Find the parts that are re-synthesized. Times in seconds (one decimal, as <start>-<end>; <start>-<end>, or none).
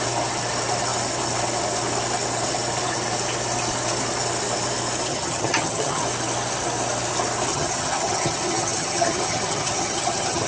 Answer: 5.1-6.0; 7.5-10.5